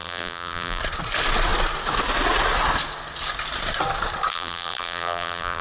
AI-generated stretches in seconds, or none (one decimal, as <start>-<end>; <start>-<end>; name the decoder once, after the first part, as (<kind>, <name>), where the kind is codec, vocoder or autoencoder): 0.0-0.8 (vocoder, BigVGAN v2); 4.3-5.6